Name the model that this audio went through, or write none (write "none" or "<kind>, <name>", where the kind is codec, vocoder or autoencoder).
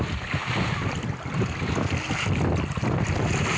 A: none